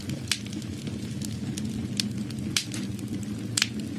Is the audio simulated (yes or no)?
no